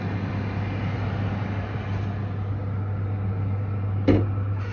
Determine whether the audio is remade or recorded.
recorded